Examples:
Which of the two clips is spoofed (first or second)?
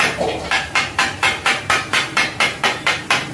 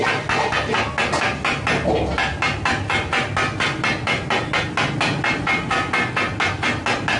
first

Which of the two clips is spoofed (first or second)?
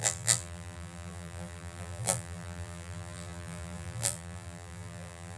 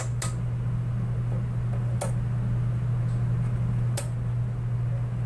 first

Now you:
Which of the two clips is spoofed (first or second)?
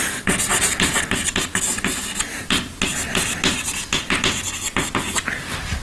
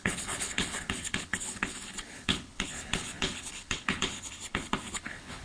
second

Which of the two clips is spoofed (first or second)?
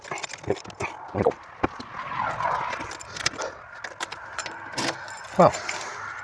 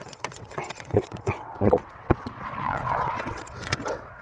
second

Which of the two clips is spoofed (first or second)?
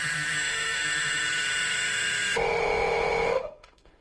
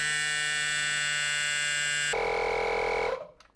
first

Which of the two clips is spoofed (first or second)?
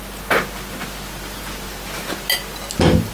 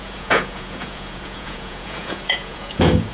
second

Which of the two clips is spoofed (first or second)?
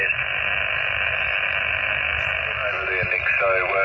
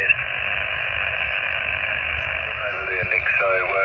second